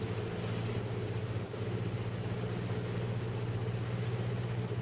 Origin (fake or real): real